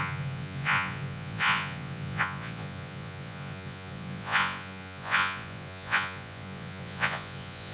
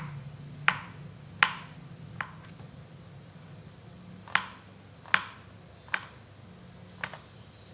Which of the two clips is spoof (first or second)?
first